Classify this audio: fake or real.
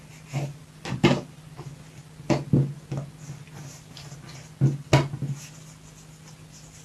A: real